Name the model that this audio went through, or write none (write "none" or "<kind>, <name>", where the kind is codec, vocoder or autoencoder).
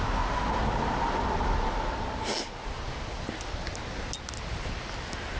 none